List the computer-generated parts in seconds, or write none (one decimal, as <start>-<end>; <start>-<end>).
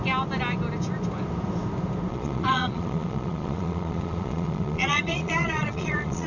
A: 2.1-6.3